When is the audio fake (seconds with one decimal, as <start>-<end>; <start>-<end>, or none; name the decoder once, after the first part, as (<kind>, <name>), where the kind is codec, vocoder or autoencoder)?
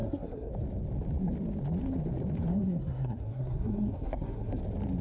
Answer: 0.0-0.5 (codec, SNAC); 2.5-4.6